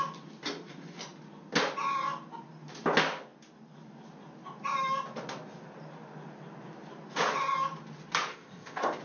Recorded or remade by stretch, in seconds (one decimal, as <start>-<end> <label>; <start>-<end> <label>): 0.0-8.3 recorded; 8.3-9.0 remade